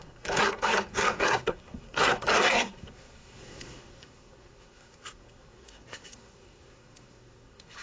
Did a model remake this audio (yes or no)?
yes